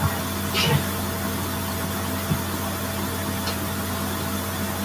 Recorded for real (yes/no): yes